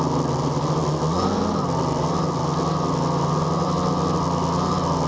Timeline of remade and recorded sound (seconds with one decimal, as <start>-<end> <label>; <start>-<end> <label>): 0.0-5.1 recorded